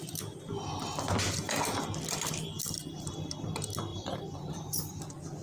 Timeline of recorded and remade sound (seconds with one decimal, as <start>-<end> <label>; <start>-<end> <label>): 0.0-3.9 recorded; 3.9-5.0 remade; 5.0-5.4 recorded